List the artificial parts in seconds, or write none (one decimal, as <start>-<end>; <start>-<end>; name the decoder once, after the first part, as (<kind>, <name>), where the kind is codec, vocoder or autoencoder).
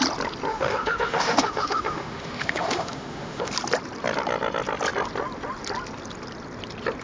0.5-3.5 (autoencoder, DAC-VAE)